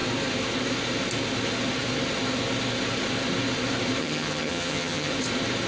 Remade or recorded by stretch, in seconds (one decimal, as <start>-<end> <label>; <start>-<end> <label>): 0.0-4.0 recorded; 4.0-5.1 remade; 5.1-5.7 recorded